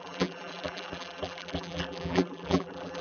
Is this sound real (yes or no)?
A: no